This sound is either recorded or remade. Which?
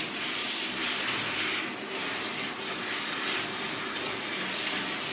recorded